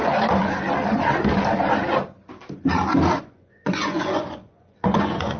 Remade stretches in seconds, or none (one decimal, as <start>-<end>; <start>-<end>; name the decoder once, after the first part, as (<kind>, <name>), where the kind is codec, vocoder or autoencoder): 3.2-5.4 (vocoder, Vocos)